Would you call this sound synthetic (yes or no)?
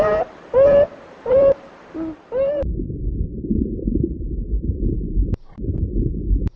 yes